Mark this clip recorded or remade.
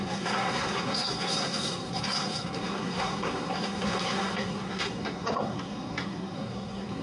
remade